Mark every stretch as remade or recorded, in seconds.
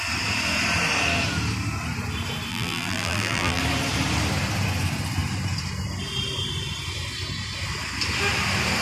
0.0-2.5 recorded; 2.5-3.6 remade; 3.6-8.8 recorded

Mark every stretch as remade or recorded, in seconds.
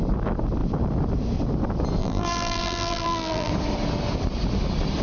0.0-2.0 recorded; 2.0-3.5 remade; 3.5-5.0 recorded